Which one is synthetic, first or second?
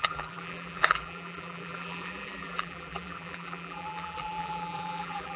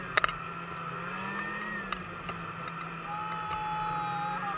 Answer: first